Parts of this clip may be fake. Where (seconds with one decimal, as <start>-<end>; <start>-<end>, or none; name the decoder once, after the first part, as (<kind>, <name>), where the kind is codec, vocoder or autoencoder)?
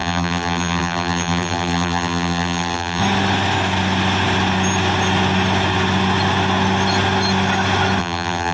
0.0-3.0 (vocoder, BigVGAN v2); 8.0-8.5